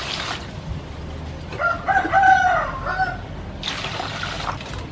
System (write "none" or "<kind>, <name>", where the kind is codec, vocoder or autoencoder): none